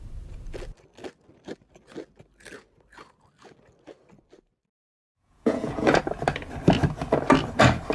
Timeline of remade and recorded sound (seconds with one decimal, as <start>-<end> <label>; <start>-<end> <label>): 0.0-5.0 recorded; 5.0-6.0 remade; 6.0-7.9 recorded